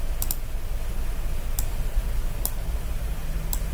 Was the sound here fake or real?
real